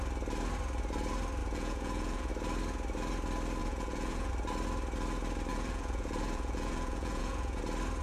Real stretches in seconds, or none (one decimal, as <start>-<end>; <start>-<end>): 0.0-1.4; 2.3-3.6; 4.3-5.5; 7.6-8.0